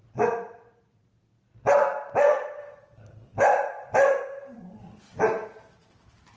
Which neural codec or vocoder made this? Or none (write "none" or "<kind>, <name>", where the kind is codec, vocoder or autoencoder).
none